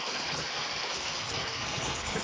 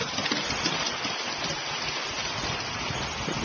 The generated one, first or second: first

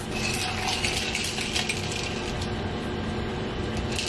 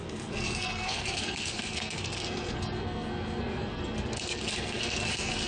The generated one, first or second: second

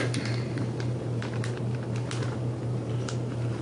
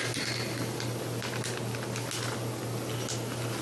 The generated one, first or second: first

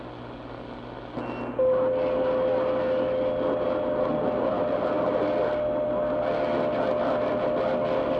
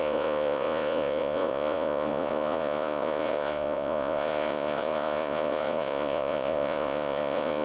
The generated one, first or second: second